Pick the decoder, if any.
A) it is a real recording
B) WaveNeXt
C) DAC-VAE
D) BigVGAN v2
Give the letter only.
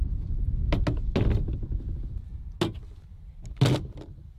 A